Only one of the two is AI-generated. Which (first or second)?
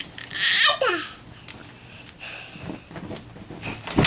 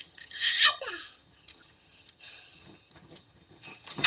second